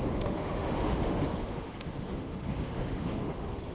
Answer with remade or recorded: remade